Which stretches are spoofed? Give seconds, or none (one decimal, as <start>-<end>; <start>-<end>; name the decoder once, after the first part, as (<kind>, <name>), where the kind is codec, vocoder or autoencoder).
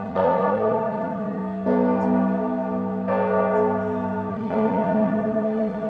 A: 0.0-1.4 (vocoder, Vocos); 4.3-5.9